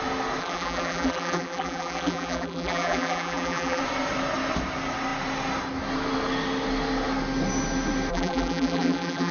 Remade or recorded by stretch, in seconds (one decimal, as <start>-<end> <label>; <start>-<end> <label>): 0.0-0.4 recorded; 0.4-3.8 remade; 3.8-8.1 recorded; 8.1-9.3 remade